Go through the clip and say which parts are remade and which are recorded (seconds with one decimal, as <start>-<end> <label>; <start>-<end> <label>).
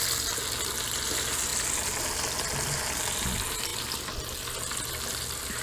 0.0-5.6 recorded